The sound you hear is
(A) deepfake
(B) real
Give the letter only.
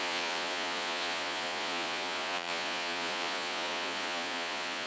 A